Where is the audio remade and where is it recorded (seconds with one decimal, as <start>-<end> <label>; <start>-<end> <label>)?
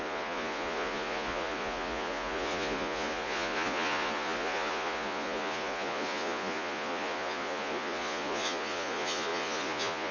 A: 0.0-10.1 remade